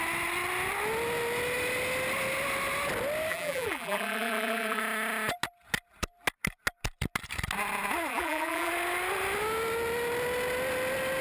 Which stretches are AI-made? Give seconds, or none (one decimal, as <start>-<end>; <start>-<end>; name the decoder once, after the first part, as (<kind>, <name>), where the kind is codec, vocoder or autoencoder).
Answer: 3.3-4.8 (vocoder, BigVGAN v2); 8.1-8.7